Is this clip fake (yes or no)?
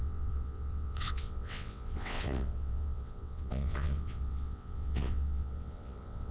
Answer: yes